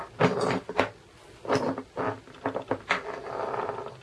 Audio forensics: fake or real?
real